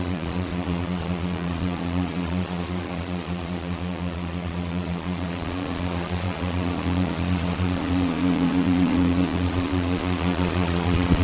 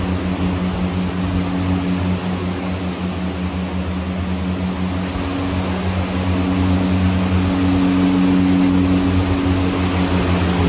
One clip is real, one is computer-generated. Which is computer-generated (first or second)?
first